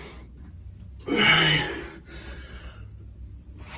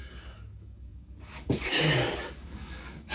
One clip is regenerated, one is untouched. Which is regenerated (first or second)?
second